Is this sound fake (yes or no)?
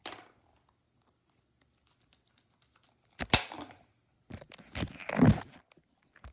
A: no